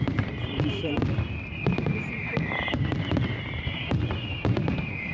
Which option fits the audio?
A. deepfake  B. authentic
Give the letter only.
A